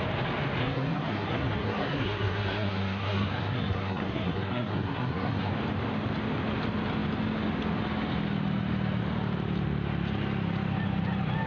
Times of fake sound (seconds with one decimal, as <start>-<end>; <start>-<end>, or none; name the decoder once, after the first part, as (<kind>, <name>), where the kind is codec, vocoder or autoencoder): 0.6-5.5 (codec, SNAC)